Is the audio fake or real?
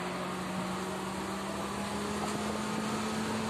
real